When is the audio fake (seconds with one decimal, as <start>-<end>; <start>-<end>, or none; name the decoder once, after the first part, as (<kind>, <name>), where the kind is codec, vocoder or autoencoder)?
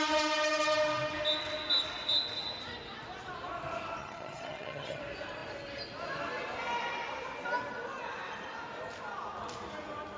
4.0-5.0 (vocoder, HiFi-GAN)